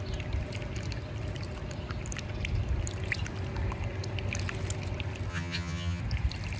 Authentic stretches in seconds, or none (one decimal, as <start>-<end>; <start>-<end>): 0.0-5.3; 6.0-6.6